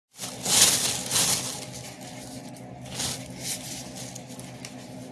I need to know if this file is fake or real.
real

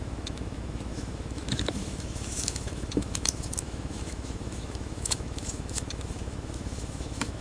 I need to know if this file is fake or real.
fake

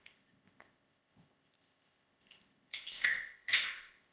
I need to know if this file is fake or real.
fake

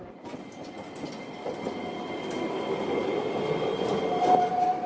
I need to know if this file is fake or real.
real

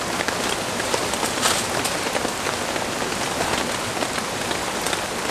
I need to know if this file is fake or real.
real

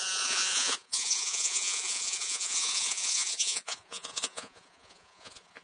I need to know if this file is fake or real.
fake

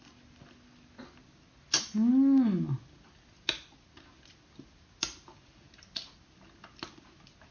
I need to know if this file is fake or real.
real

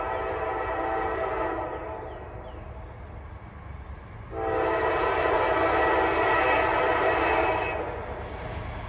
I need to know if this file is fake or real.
real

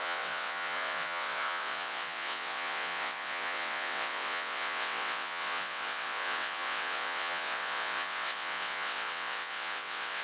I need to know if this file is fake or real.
fake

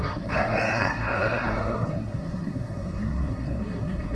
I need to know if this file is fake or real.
fake